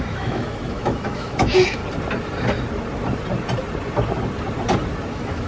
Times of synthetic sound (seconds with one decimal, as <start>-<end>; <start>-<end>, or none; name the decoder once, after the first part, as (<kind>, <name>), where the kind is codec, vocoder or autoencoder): 0.0-1.8 (autoencoder, DAC-VAE); 5.1-5.5